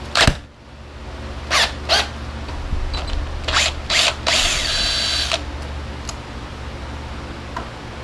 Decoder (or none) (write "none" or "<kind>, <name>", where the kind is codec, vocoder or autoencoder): none